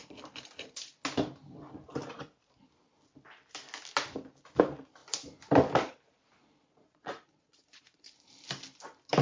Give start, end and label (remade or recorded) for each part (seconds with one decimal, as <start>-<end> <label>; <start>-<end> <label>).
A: 0.0-6.4 recorded; 6.4-8.0 remade; 8.0-9.2 recorded